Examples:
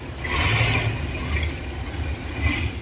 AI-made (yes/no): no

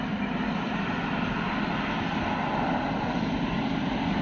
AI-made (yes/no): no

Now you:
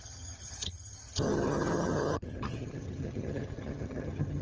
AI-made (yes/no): yes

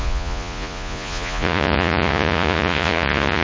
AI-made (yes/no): yes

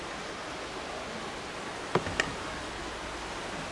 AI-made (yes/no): no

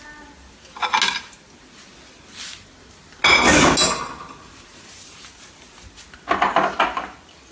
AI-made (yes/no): no